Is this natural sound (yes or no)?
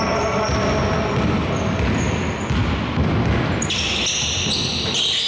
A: yes